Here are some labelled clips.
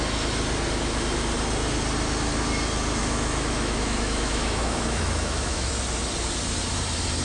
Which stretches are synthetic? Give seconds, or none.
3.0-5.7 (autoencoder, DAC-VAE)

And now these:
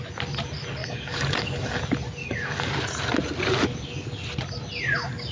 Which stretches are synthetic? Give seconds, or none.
0.8-1.8 (codec, DAC); 2.2-2.7

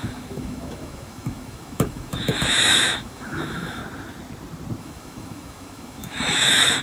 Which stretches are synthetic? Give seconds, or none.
0.0-3.8 (autoencoder, DAC-VAE); 4.8-6.8

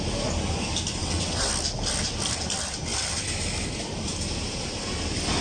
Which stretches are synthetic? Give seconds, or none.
1.0-1.5 (vocoder, WaveNeXt)

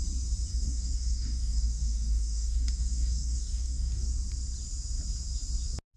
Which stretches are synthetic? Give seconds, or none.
0.5-4.1 (codec, DAC)